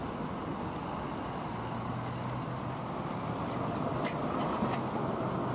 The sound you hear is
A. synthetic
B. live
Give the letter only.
B